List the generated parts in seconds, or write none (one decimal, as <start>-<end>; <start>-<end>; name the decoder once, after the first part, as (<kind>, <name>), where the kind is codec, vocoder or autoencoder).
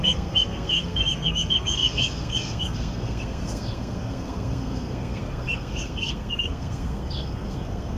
0.0-8.0 (codec, SNAC)